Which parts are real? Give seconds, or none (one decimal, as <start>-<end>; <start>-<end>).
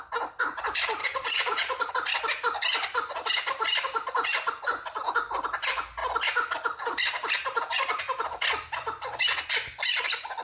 0.0-1.0; 1.9-10.4